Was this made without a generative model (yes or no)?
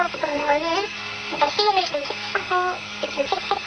no